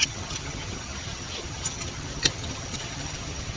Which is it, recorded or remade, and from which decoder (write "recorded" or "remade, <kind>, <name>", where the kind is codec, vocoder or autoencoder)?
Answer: remade, vocoder, HiFi-GAN